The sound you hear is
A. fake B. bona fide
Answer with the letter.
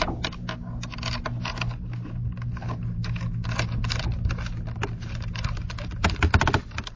B